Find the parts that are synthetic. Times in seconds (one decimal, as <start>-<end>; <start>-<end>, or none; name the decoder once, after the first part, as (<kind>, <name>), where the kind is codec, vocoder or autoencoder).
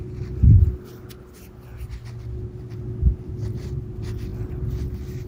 none